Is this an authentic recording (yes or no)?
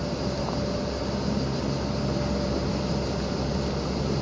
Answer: yes